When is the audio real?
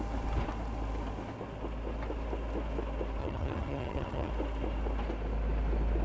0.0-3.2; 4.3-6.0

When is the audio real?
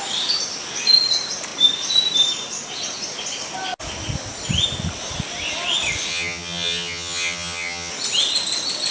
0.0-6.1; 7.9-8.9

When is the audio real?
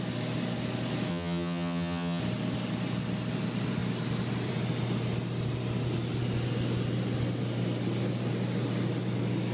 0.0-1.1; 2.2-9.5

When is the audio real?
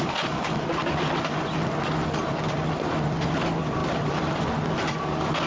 0.0-5.5